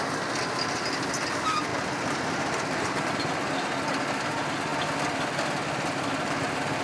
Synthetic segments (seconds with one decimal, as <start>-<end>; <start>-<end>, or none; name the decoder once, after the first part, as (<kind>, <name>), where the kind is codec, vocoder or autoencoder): 1.7-3.3 (vocoder, BigVGAN v2)